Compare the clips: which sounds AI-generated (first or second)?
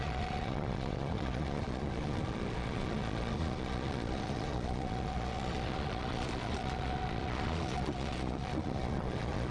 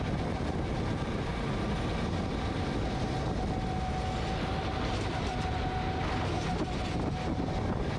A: first